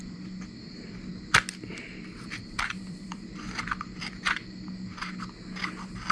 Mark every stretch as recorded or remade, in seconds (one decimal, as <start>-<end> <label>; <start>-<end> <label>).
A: 0.0-1.1 remade; 1.1-1.7 recorded; 1.7-4.4 remade; 4.4-6.1 recorded